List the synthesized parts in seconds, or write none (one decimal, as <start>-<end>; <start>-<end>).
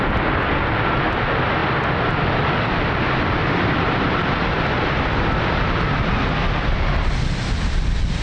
none